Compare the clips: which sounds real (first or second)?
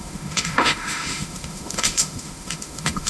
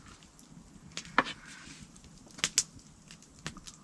second